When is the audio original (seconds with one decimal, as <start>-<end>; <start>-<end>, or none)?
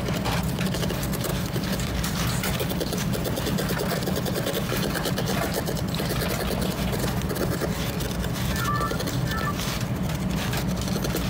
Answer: 0.0-11.3